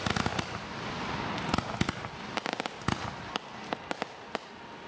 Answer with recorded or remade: recorded